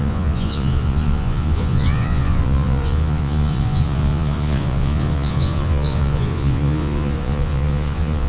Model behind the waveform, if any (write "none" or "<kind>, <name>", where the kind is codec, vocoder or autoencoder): vocoder, Vocos